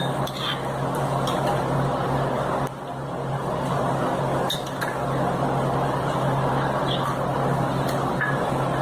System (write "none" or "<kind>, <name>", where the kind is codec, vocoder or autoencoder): none